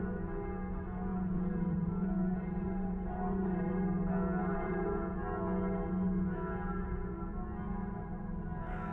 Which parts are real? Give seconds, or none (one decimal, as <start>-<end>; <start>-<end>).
0.0-1.1; 3.7-4.4; 4.9-8.9